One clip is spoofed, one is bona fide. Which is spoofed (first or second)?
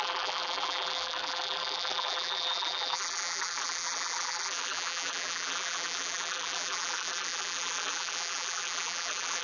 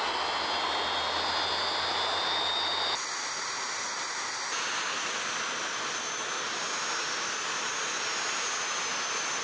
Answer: first